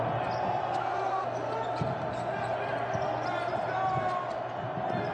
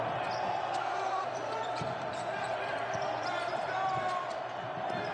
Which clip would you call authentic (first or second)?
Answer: first